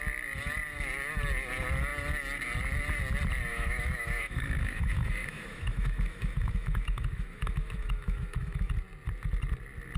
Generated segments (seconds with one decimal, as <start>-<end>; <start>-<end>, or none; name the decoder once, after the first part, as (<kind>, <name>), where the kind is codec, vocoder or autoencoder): 3.5-8.7 (autoencoder, DAC-VAE)